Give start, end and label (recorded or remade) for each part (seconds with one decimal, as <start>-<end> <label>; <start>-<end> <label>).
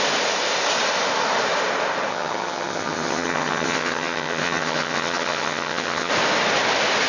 0.0-2.1 recorded; 2.1-6.1 remade; 6.1-7.1 recorded